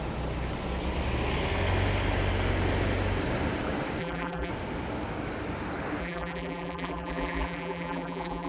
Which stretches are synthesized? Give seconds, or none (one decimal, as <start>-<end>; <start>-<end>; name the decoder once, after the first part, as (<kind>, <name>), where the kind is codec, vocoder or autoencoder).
4.0-4.5 (vocoder, BigVGAN v2); 6.0-8.5